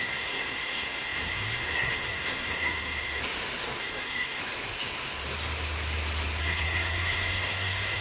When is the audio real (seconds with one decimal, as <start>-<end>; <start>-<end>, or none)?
3.2-3.8; 4.4-6.4